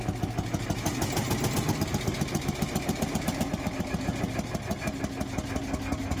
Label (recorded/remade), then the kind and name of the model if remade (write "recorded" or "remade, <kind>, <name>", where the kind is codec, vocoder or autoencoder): recorded